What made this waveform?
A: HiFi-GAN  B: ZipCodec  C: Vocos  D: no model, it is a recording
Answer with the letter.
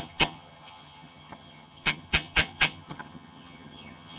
A